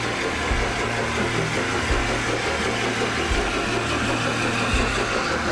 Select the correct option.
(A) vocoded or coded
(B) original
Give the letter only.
B